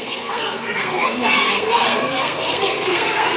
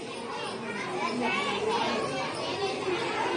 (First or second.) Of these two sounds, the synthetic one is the first